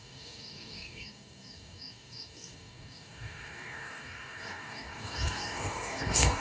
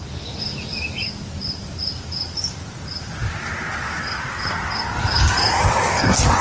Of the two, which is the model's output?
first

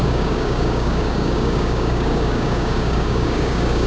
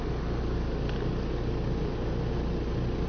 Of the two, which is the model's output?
first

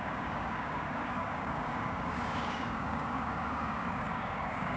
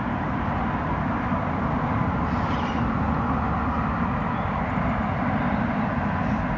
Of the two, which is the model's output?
first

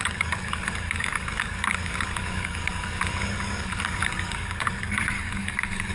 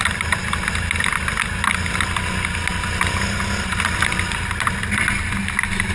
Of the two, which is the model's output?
first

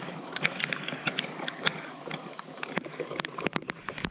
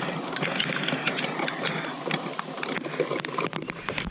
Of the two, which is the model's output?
first